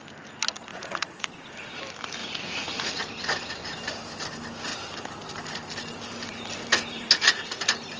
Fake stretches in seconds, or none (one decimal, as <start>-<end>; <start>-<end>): 0.7-1.5; 2.2-3.0